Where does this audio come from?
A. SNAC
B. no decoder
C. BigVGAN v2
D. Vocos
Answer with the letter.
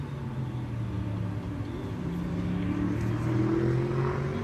B